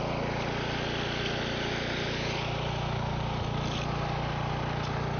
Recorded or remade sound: recorded